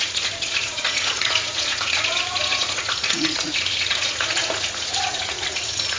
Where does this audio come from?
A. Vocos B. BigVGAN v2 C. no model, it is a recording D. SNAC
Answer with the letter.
A